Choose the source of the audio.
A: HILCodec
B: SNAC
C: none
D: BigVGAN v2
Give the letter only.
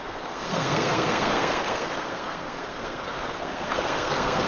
B